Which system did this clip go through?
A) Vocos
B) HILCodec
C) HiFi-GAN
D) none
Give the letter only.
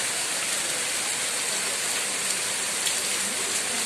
D